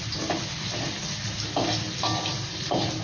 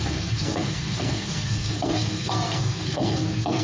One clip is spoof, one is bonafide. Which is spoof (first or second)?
second